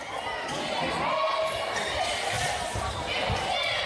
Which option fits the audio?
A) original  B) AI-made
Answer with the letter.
A